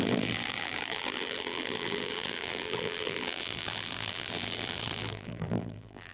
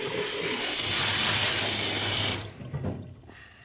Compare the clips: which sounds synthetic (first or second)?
first